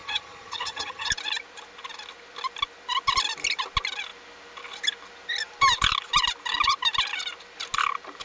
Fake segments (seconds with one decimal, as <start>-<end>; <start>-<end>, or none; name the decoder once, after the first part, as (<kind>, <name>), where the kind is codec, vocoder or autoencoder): 0.0-1.1 (vocoder, HiFi-GAN)